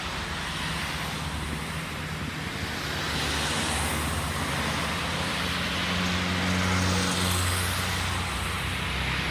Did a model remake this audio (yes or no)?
no